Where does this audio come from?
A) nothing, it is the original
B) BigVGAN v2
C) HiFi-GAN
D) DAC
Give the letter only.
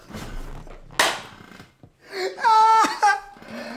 A